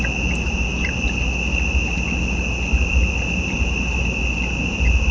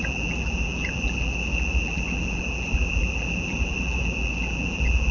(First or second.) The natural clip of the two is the first